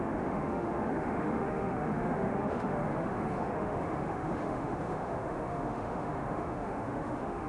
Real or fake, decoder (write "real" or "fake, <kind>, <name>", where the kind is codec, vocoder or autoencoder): fake, autoencoder, DAC-VAE